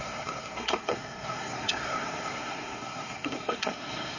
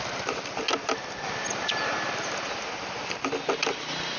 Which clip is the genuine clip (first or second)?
second